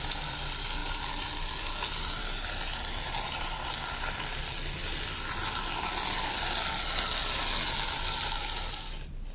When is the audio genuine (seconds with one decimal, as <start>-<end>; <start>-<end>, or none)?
0.0-9.3